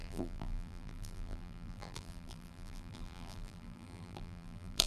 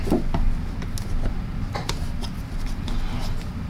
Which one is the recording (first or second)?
second